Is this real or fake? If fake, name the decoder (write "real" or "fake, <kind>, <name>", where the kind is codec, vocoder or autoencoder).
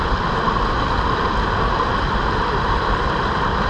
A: real